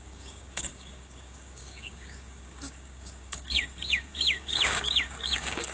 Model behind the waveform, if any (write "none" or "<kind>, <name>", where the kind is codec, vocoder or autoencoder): codec, DAC